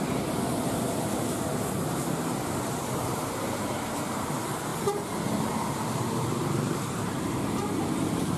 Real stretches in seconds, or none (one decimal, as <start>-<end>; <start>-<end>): 4.7-5.5